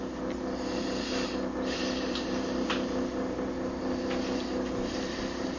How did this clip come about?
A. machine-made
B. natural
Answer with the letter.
B